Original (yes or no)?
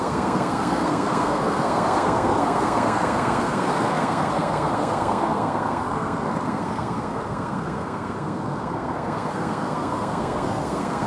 no